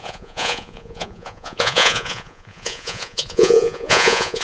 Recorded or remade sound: remade